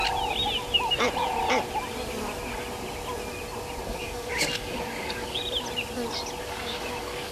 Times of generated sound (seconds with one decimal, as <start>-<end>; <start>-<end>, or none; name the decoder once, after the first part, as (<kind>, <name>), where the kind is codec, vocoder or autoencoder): 3.8-5.4 (codec, DAC); 6.4-7.3